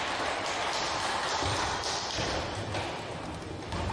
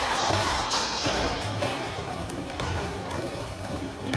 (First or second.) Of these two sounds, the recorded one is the first